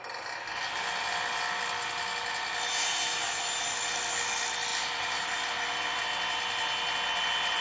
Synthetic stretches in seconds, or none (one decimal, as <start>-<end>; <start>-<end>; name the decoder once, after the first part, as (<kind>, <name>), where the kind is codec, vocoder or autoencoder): none